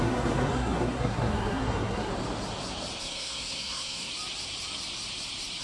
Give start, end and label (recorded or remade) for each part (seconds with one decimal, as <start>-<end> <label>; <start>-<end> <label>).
0.0-2.1 remade; 2.1-3.0 recorded; 3.0-4.1 remade; 4.1-5.6 recorded